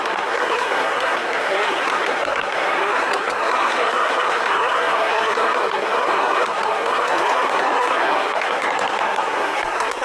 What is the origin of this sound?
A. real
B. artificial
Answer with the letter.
B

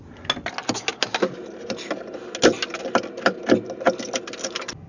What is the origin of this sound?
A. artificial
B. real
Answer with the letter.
B